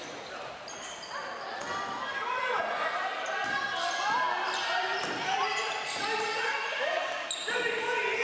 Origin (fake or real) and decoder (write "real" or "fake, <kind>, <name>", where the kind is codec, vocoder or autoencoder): real